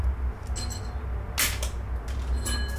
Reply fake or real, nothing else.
real